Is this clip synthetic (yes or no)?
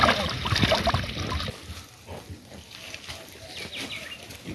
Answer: no